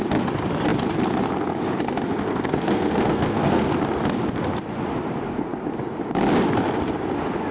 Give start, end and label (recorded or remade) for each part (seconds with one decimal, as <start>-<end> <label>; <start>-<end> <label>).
0.0-2.3 recorded; 2.3-3.6 remade; 3.6-7.5 recorded

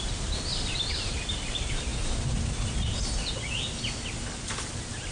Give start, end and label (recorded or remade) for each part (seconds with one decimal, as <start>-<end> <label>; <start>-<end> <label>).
0.0-5.1 recorded

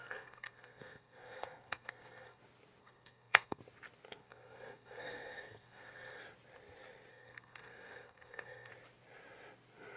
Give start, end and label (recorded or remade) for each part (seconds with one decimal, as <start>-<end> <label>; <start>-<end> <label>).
0.0-2.4 remade; 2.4-2.8 recorded; 2.8-3.6 remade; 3.6-4.2 recorded; 4.2-6.2 remade; 6.2-7.1 recorded; 7.1-8.7 remade; 8.7-10.0 recorded

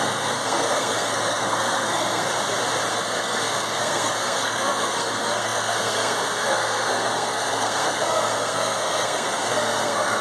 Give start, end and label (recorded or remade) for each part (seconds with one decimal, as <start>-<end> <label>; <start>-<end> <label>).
0.0-2.3 remade; 2.3-2.9 recorded; 2.9-10.2 remade

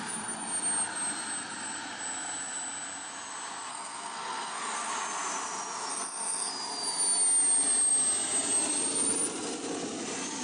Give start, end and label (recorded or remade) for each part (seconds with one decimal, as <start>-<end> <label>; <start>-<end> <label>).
0.0-3.7 recorded; 3.7-4.9 remade; 4.9-5.9 recorded; 5.9-6.5 remade; 6.5-10.4 recorded

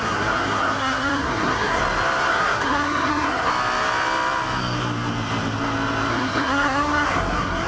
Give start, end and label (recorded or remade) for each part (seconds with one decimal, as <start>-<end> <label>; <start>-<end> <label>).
0.0-1.8 remade; 1.8-2.3 recorded; 2.3-3.5 remade; 3.5-6.1 recorded; 6.1-7.7 remade

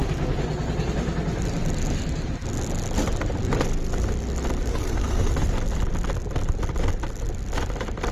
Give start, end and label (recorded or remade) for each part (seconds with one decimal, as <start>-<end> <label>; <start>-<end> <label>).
0.0-4.7 recorded; 4.7-5.3 remade; 5.3-8.1 recorded

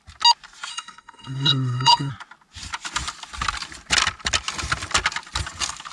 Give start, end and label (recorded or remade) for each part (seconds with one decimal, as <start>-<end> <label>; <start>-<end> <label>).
0.0-0.7 recorded; 0.7-2.1 remade; 2.1-5.9 recorded